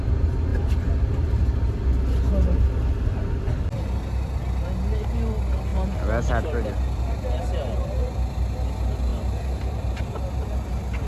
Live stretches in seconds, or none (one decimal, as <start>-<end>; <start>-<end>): 0.0-9.1; 10.0-11.1